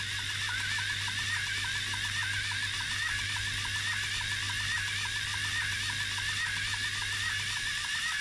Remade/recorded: recorded